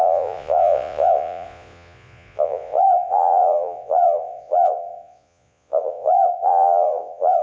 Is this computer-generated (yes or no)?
yes